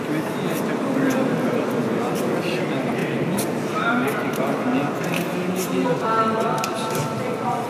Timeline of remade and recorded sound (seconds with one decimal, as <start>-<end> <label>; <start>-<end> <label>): 0.0-7.7 recorded